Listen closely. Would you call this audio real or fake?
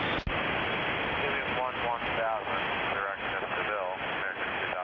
real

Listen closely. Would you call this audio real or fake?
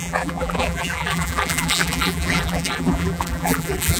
fake